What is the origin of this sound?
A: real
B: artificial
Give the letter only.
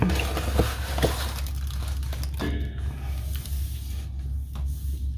A